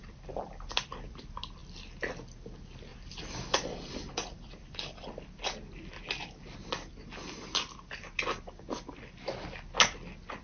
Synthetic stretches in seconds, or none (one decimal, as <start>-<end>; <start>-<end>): 0.0-0.8; 2.9-5.1